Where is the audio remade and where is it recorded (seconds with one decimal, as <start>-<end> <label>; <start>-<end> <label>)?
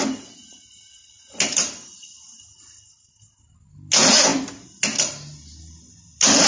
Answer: 0.0-6.5 recorded